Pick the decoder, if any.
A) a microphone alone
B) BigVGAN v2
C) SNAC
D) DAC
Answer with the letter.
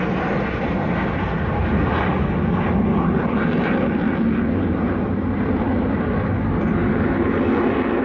A